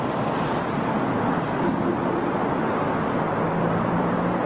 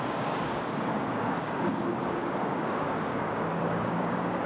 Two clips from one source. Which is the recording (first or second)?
first